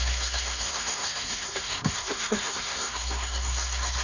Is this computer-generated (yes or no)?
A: yes